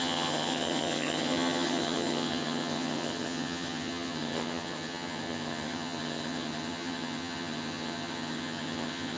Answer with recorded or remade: remade